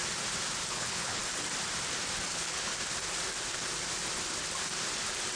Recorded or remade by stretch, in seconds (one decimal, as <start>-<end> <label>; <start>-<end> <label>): 0.0-0.7 recorded; 0.7-1.2 remade; 1.2-2.3 recorded; 2.3-2.7 remade; 2.7-5.4 recorded